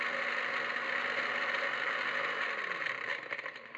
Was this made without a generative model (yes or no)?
yes